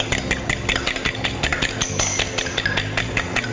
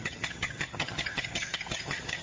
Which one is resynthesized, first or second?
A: second